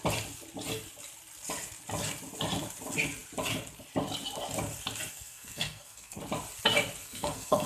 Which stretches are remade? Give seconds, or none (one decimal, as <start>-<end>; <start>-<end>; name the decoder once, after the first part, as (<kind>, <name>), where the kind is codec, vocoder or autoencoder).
5.1-6.2 (codec, SNAC); 7.0-7.7